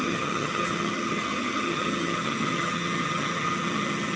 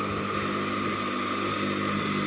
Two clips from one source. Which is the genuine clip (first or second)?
second